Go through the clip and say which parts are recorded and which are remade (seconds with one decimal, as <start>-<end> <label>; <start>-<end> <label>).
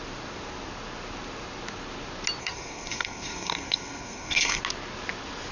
0.0-2.4 recorded; 2.4-4.6 remade; 4.6-5.5 recorded